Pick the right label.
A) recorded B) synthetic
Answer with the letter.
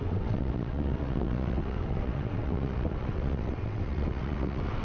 B